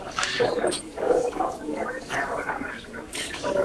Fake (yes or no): yes